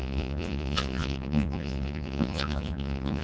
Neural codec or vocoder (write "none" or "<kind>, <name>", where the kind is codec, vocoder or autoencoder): vocoder, Vocos